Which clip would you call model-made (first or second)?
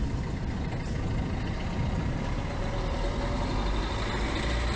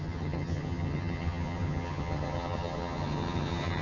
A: second